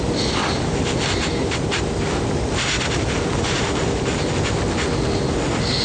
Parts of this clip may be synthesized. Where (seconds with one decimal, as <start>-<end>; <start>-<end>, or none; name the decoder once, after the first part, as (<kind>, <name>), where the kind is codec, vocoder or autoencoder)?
none